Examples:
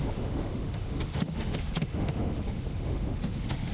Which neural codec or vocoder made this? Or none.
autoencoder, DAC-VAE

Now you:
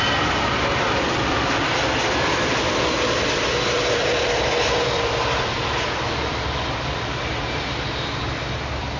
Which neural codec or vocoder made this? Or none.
vocoder, BigVGAN v2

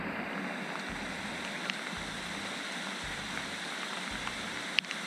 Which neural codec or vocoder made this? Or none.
none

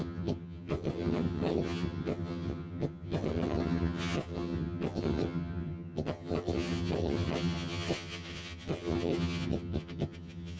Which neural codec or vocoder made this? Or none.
vocoder, HiFi-GAN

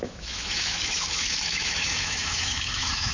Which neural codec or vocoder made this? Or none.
autoencoder, DAC-VAE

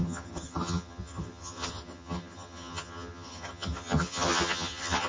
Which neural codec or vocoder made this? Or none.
vocoder, HiFi-GAN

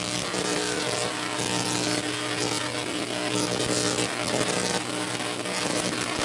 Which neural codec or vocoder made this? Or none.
none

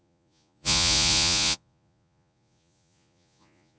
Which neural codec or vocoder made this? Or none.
vocoder, Vocos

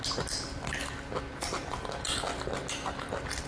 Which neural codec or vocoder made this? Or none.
none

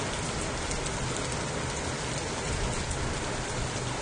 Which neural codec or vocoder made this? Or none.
none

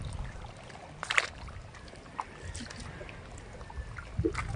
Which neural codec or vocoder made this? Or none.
none